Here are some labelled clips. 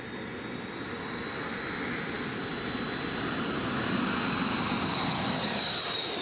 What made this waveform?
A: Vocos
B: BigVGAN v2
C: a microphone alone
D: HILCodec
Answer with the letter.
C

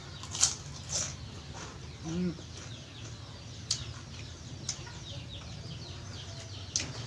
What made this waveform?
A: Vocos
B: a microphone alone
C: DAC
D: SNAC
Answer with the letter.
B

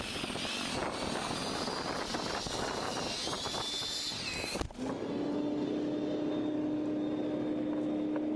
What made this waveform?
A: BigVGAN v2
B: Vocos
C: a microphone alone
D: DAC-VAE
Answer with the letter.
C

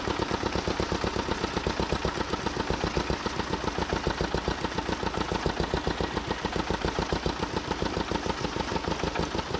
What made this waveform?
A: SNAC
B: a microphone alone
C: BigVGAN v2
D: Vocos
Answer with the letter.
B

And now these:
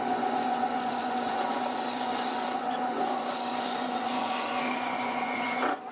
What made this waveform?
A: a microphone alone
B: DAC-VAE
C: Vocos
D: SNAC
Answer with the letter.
C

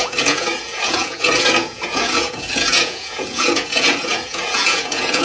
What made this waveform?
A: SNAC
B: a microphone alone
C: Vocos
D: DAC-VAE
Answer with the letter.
C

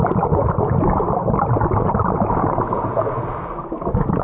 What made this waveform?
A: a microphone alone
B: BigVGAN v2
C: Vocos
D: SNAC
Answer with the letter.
A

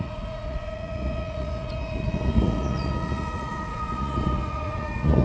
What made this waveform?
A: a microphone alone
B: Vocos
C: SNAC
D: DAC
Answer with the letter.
B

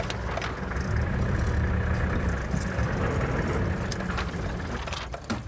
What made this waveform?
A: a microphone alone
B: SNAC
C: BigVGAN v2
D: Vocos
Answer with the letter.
A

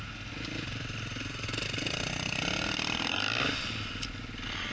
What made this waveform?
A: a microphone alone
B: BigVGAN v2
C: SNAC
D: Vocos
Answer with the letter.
A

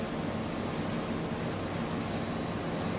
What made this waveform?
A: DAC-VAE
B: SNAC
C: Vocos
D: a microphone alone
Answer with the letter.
D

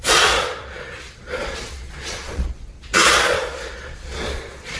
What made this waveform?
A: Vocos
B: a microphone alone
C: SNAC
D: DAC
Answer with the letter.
A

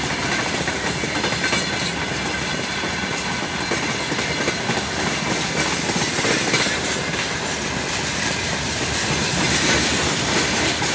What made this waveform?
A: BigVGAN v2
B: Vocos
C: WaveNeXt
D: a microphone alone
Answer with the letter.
D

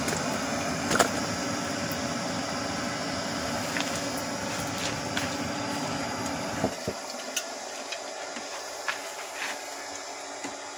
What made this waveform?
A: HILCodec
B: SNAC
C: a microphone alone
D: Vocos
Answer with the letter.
C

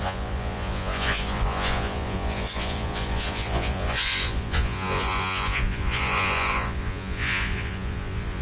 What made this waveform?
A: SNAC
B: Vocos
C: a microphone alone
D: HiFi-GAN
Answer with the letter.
B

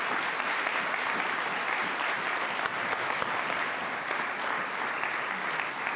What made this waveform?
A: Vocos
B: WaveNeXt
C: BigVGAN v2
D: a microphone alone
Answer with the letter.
D